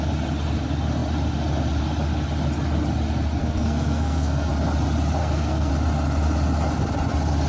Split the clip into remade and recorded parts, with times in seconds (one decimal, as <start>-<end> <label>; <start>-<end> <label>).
0.0-3.4 recorded; 3.4-4.5 remade; 4.5-5.2 recorded; 5.2-5.7 remade; 5.7-7.5 recorded